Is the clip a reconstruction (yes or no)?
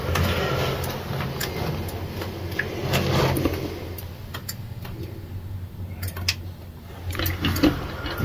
no